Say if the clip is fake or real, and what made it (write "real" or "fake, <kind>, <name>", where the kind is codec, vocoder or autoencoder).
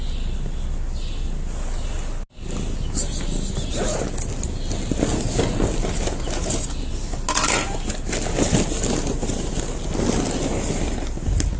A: real